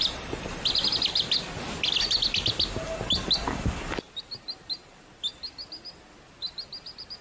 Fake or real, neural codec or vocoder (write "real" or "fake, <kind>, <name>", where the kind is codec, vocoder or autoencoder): real